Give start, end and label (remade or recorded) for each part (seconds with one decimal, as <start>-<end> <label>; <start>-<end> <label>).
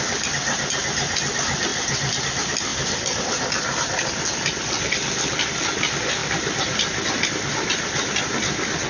0.0-1.7 recorded; 1.7-2.2 remade; 2.2-2.7 recorded; 2.7-5.6 remade; 5.6-6.2 recorded; 6.2-7.2 remade; 7.2-8.9 recorded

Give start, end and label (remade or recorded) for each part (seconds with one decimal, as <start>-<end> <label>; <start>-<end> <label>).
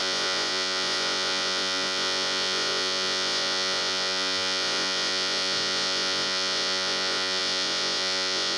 0.0-8.6 remade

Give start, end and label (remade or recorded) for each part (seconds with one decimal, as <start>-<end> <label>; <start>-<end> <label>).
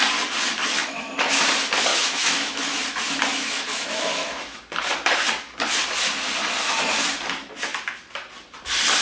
0.0-0.8 recorded; 0.8-1.4 remade; 1.4-1.9 recorded; 1.9-2.8 remade; 2.8-3.3 recorded; 3.3-4.6 remade; 4.6-9.0 recorded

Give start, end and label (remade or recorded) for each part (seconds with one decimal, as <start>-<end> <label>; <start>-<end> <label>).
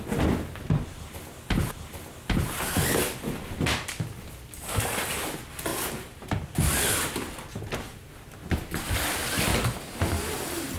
0.0-5.7 recorded; 5.7-6.3 remade; 6.3-9.5 recorded; 9.5-10.3 remade; 10.3-10.8 recorded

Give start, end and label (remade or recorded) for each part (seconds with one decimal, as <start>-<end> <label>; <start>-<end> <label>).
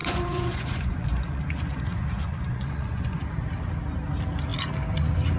0.0-3.2 remade; 3.2-5.4 recorded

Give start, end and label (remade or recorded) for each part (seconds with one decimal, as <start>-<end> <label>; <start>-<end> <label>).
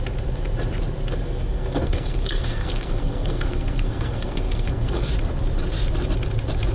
0.0-1.1 recorded; 1.1-5.1 remade; 5.1-6.7 recorded